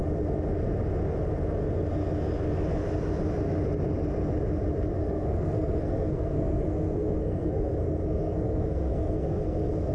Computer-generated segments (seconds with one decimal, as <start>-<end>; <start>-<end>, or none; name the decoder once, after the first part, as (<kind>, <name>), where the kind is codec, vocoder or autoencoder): 5.0-9.9 (codec, SNAC)